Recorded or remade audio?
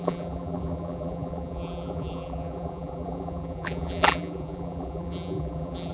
remade